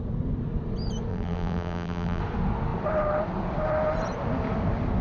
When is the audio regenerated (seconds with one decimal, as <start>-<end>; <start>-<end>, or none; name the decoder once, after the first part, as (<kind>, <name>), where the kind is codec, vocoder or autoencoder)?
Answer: 1.1-2.2 (vocoder, BigVGAN v2)